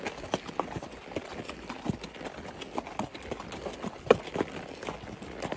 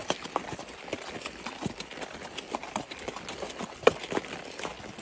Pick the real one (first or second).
first